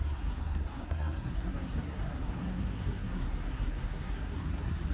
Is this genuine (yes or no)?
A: no